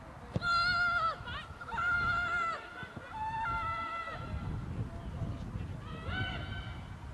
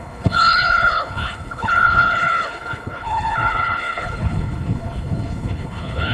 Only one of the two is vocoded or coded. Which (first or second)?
second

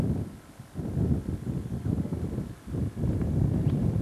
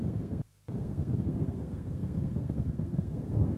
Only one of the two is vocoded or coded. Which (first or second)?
second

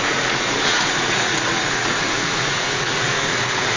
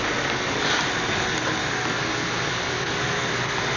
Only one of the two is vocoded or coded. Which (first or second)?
first